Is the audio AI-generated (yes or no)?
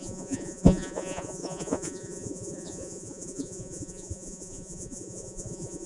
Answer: yes